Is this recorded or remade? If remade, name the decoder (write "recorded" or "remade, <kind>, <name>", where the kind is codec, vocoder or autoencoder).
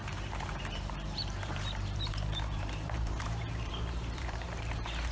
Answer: remade, vocoder, BigVGAN v2